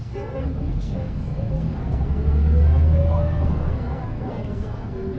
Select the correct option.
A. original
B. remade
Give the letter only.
B